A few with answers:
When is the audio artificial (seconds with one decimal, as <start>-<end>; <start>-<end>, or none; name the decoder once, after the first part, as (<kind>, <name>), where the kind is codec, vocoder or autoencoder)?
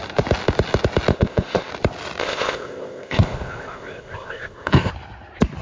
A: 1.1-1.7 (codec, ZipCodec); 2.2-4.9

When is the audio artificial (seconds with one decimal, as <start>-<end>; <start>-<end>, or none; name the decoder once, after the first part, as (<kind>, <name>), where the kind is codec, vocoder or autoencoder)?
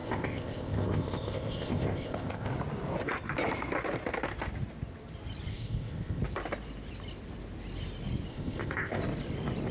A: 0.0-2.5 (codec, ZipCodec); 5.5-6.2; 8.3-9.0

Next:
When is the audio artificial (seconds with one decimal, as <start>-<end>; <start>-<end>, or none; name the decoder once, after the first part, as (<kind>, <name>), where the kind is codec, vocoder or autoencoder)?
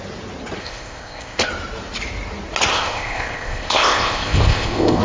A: 0.6-1.5 (codec, ZipCodec); 2.7-5.0